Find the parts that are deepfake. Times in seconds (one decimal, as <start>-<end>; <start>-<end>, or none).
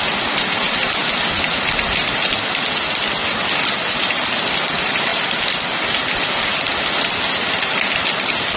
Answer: none